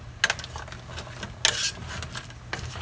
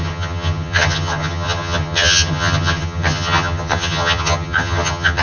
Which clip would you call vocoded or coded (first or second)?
second